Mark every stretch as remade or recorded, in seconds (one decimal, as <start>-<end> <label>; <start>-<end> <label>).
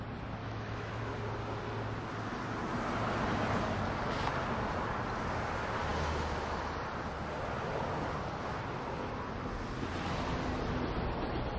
0.0-0.4 recorded; 0.4-1.0 remade; 1.0-11.6 recorded